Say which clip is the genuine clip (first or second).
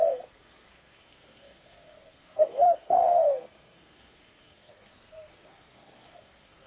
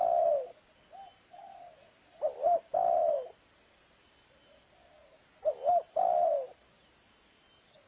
second